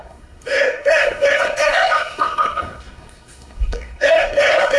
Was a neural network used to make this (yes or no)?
yes